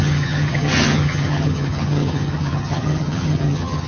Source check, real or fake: fake